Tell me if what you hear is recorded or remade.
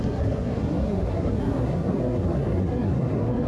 remade